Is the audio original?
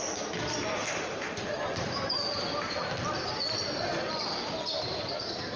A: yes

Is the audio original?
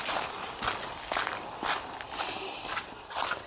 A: yes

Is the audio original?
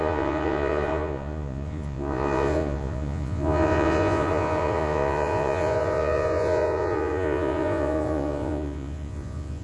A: no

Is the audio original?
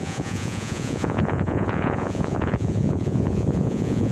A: no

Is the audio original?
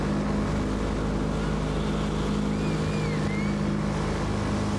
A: yes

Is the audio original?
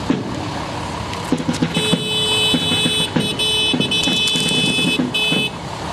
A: yes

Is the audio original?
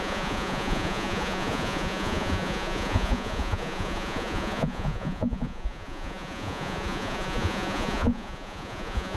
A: no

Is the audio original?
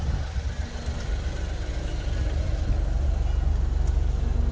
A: yes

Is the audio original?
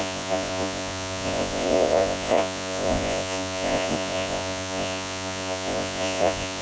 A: no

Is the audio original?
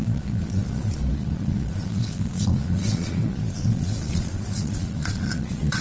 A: no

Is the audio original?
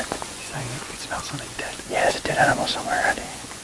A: no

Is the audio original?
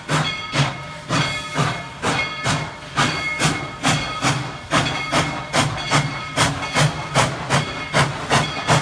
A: yes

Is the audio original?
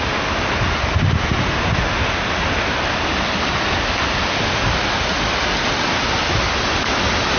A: yes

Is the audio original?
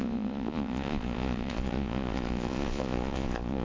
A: no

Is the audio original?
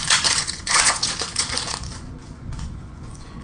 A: no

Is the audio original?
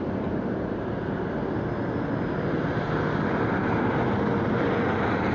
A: yes